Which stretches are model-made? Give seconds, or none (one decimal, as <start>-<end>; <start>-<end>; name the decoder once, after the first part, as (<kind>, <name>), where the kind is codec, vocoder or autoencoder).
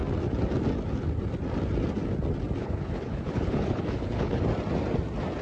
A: 2.6-4.4 (codec, HILCodec)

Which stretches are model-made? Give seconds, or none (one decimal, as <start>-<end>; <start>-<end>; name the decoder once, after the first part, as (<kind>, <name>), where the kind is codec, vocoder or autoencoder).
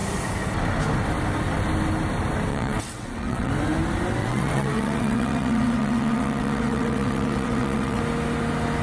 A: 2.5-3.5 (vocoder, WaveNeXt); 4.2-8.0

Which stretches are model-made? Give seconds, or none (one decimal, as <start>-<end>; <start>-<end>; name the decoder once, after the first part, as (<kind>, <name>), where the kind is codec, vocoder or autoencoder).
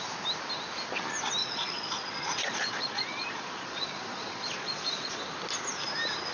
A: 1.4-5.2 (vocoder, Vocos)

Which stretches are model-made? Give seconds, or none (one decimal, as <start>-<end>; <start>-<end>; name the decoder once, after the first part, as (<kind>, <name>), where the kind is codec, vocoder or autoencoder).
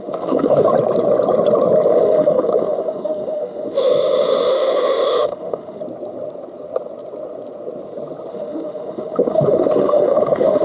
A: 0.0-0.7 (autoencoder, DAC-VAE); 1.9-3.9; 4.5-5.8; 8.3-10.6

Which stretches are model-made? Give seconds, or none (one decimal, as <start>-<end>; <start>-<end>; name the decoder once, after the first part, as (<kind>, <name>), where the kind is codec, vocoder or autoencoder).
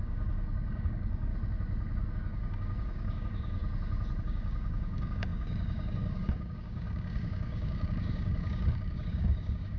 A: 0.0-1.3 (codec, DAC); 2.1-3.6; 4.2-9.8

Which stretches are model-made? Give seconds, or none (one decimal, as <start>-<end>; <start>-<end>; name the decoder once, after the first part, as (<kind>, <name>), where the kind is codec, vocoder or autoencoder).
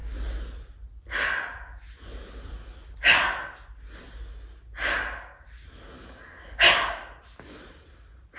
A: none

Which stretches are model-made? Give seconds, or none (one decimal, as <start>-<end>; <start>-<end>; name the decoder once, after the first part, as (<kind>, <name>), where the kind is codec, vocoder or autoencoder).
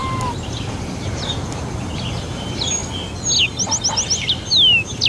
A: 0.0-1.6 (vocoder, BigVGAN v2)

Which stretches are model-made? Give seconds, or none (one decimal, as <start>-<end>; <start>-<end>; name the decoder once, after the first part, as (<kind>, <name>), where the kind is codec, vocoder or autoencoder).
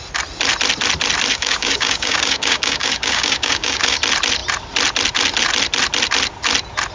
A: 1.3-4.0 (codec, DAC)